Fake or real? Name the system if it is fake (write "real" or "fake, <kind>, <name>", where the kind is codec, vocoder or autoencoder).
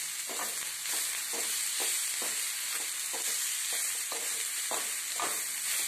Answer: real